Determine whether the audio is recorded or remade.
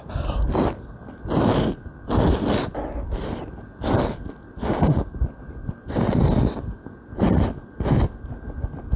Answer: recorded